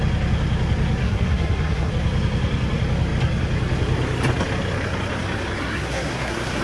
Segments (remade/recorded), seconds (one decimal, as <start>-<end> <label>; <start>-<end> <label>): 0.0-1.0 recorded; 1.0-1.9 remade; 1.9-5.6 recorded; 5.6-6.6 remade